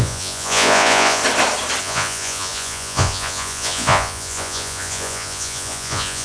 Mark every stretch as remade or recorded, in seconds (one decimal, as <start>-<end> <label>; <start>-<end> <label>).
0.0-1.2 remade; 1.2-1.8 recorded; 1.8-6.2 remade